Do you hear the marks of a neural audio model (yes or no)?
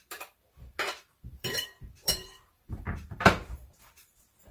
yes